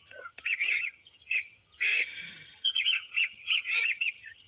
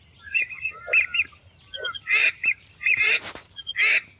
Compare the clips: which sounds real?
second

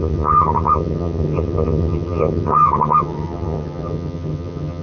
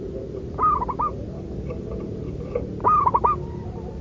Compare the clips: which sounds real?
second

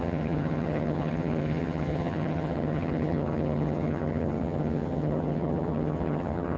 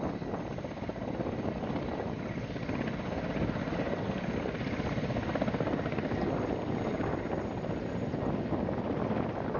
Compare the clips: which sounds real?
second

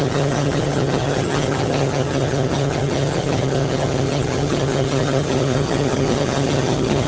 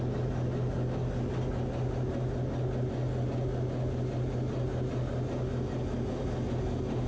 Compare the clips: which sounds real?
second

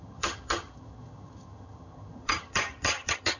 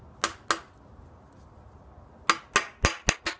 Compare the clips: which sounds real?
second